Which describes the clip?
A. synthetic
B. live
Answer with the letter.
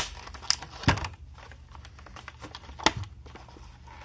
B